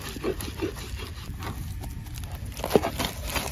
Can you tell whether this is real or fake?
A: real